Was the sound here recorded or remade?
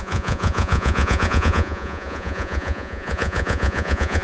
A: remade